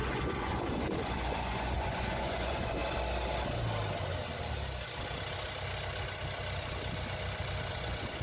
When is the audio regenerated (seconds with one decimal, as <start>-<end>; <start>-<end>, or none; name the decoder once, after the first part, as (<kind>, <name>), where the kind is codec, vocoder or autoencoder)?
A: 0.0-2.8 (vocoder, Vocos); 7.7-8.2